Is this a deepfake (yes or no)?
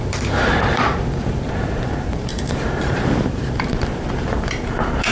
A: yes